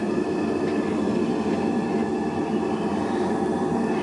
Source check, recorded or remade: recorded